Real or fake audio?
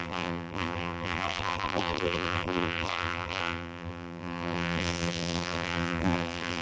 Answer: fake